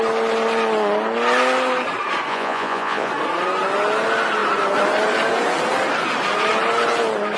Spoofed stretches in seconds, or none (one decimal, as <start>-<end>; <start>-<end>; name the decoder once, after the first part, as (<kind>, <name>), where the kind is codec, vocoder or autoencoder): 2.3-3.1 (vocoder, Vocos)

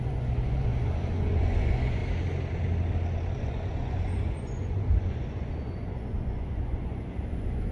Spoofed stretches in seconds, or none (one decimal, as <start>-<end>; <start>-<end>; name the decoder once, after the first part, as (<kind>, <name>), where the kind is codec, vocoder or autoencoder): 0.0-2.0 (vocoder, Vocos); 3.4-7.7

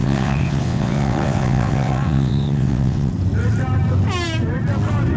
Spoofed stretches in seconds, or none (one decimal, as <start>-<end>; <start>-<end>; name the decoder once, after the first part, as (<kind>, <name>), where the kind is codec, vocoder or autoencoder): 0.0-3.1 (vocoder, WaveNeXt)

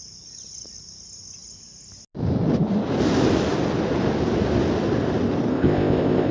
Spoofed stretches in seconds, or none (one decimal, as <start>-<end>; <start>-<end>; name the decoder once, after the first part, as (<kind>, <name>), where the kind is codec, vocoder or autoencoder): 5.5-6.3 (codec, ZipCodec)

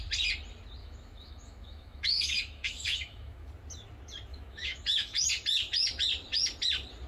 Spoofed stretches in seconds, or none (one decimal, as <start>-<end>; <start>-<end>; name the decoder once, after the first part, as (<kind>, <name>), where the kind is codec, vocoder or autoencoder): 0.8-3.5 (autoencoder, DAC-VAE); 4.3-5.3